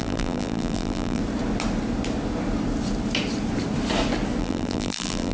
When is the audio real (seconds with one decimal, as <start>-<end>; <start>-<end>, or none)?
1.2-4.4